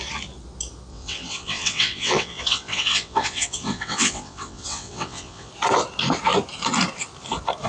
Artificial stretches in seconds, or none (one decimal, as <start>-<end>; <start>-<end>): 0.9-5.5

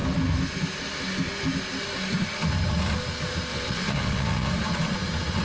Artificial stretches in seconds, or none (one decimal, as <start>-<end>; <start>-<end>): 3.5-4.5

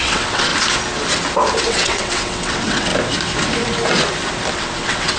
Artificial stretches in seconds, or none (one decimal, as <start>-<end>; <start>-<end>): 0.0-0.5; 1.6-2.9; 4.5-5.2

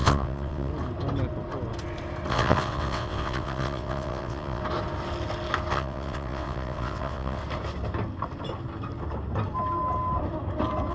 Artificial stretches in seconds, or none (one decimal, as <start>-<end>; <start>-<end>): 0.0-0.7; 2.3-4.6; 5.7-7.4

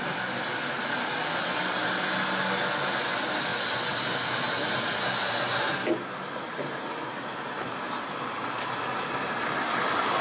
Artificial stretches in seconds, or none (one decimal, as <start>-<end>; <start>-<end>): none